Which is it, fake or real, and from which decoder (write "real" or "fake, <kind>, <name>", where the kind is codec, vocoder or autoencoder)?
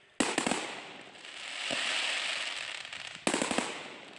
real